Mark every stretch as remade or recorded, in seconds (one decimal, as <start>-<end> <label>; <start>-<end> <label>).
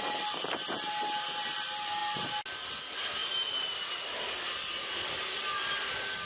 0.0-6.3 recorded